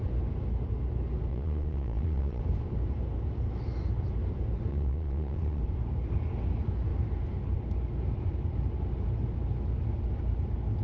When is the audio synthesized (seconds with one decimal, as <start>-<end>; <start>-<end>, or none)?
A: 1.3-2.4; 4.7-5.6